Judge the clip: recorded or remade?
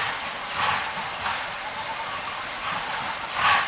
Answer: recorded